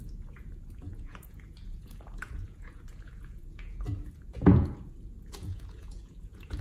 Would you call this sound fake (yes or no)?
yes